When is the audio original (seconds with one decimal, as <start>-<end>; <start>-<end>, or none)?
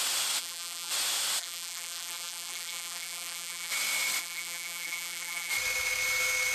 0.0-0.4; 0.9-1.4; 3.7-4.2; 5.5-6.5